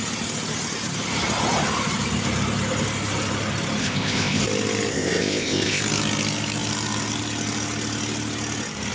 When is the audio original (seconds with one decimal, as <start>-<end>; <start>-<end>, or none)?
0.0-3.8; 4.4-4.9; 5.8-8.9